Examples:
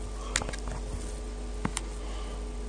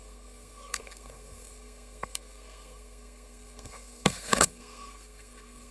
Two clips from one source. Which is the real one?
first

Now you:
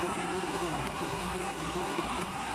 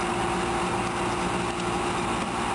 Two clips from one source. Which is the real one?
second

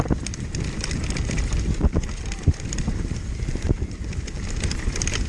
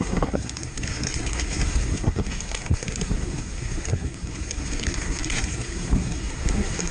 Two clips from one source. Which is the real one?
first